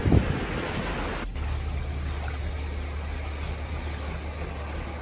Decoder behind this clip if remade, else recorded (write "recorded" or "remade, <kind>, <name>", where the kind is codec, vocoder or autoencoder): recorded